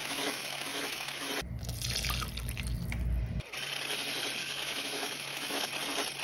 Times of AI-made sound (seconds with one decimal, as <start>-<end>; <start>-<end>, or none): 0.0-1.3; 4.4-5.7